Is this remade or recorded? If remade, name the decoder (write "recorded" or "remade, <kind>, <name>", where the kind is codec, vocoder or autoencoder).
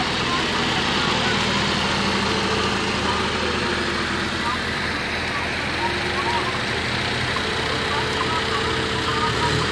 recorded